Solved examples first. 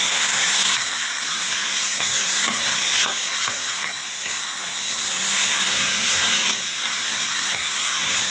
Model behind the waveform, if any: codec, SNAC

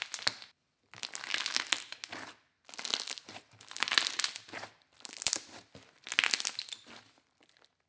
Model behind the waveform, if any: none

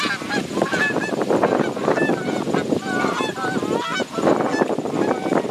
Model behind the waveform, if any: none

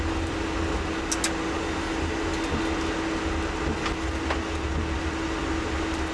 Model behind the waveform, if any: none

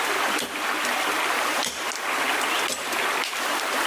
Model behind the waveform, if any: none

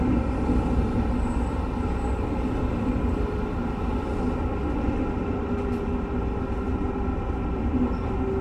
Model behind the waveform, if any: none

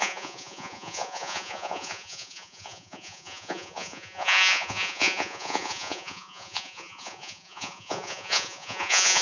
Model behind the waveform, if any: vocoder, Vocos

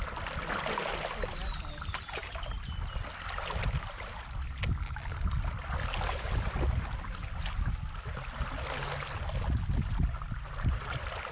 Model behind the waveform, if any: none